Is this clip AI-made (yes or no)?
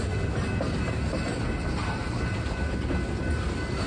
no